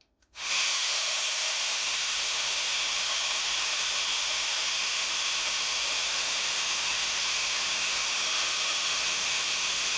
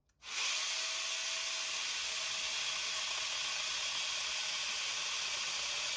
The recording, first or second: second